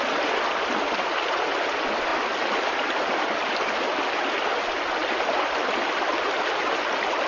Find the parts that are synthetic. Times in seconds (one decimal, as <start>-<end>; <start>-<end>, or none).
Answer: 2.1-3.5; 5.0-6.1